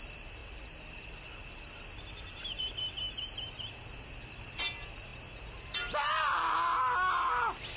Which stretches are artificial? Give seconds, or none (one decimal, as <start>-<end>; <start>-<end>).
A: none